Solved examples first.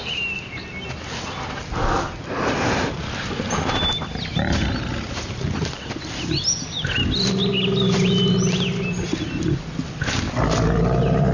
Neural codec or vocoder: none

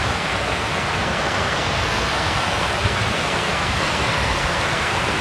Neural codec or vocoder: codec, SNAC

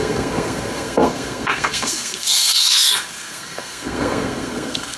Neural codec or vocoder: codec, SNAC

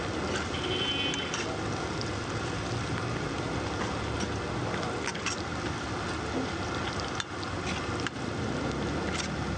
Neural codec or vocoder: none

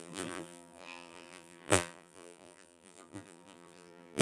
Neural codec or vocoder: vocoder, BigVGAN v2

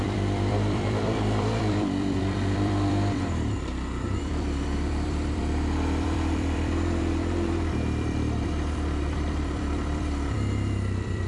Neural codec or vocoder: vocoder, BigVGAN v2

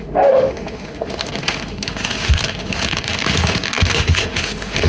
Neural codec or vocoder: autoencoder, DAC-VAE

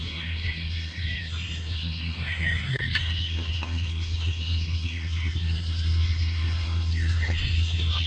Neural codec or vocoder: codec, SNAC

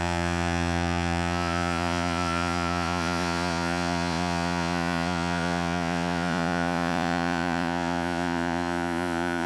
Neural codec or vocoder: vocoder, Vocos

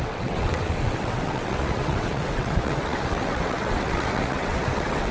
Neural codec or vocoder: vocoder, WaveNeXt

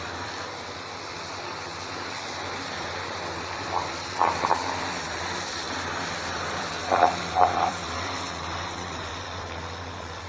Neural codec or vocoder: vocoder, BigVGAN v2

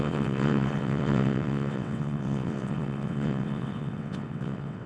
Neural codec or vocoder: vocoder, WaveNeXt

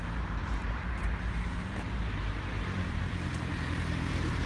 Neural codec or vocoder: vocoder, BigVGAN v2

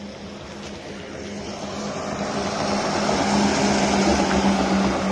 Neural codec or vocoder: none